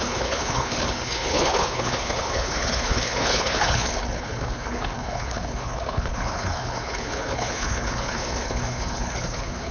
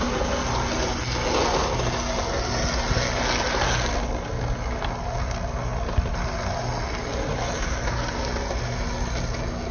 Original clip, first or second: second